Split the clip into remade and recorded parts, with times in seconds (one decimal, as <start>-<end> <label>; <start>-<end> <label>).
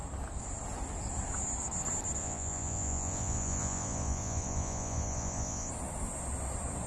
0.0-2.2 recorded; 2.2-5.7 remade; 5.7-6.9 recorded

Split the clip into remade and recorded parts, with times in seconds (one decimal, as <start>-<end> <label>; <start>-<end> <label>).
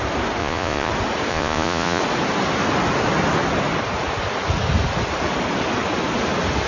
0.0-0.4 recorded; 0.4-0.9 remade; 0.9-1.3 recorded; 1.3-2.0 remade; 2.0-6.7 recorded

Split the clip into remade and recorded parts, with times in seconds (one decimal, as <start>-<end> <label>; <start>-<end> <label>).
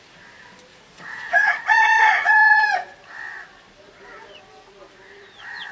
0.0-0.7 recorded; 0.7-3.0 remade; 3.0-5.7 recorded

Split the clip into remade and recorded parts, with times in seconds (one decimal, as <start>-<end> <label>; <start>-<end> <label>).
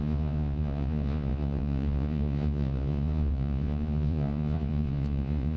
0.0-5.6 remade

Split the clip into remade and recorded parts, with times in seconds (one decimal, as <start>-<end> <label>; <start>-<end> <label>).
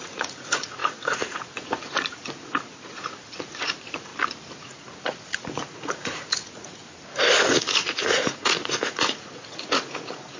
0.0-4.1 remade; 4.1-4.6 recorded; 4.6-6.8 remade; 6.8-7.5 recorded; 7.5-10.4 remade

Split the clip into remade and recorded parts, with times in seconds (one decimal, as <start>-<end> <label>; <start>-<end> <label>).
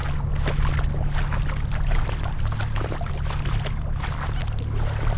0.0-5.2 recorded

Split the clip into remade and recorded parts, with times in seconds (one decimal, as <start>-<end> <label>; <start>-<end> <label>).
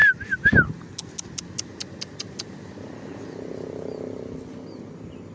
0.0-5.3 recorded